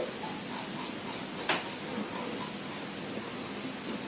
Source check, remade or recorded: recorded